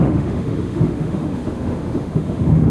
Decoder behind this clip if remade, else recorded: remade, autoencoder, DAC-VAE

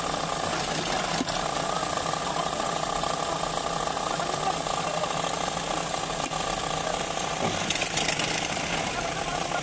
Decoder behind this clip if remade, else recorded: recorded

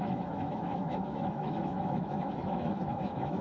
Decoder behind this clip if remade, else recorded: remade, autoencoder, DAC-VAE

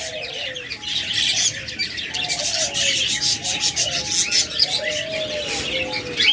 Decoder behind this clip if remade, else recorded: recorded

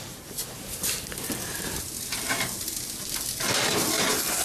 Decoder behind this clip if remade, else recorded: recorded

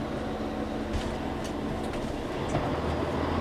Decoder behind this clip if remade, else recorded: recorded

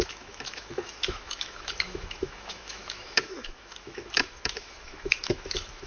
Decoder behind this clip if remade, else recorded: remade, autoencoder, DAC-VAE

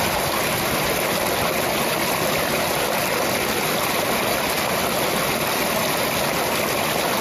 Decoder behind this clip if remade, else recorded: recorded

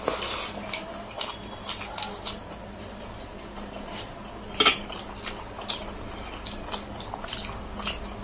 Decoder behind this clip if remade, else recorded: recorded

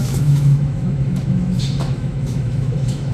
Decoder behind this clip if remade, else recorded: remade, autoencoder, DAC-VAE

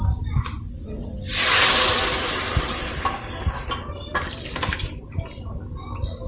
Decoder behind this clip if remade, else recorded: recorded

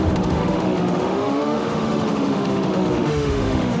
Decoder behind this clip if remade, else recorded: remade, autoencoder, DAC-VAE